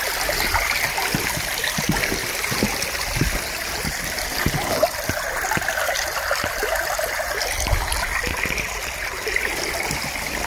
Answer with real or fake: real